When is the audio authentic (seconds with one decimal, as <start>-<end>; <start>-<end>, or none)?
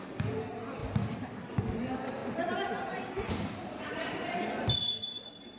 0.0-2.2